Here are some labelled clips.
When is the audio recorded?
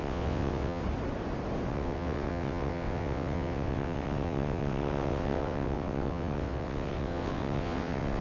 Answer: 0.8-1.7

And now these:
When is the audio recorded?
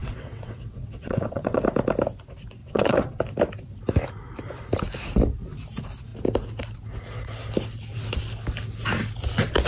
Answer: 1.6-2.6; 3.2-9.7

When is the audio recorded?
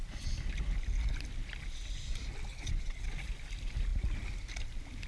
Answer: 0.0-2.5; 3.1-5.1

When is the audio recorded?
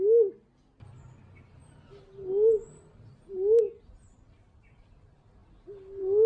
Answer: 0.0-6.3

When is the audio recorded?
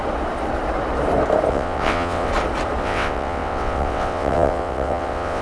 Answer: 0.0-1.5; 2.3-2.8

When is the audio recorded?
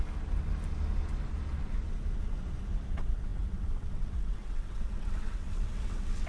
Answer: 0.0-2.9